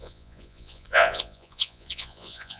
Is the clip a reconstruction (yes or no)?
yes